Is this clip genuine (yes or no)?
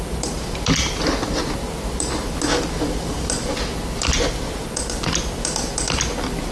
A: yes